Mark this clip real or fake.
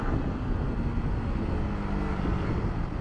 real